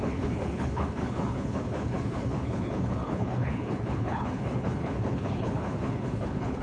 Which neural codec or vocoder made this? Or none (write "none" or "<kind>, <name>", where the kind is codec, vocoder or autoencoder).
codec, HILCodec